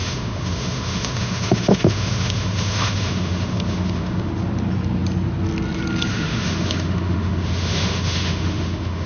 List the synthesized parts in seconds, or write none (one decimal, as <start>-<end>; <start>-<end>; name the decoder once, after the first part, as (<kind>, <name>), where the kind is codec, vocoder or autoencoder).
0.0-4.3 (autoencoder, DAC-VAE); 6.1-9.1